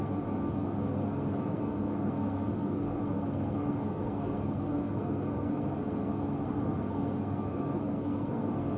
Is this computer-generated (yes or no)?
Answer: yes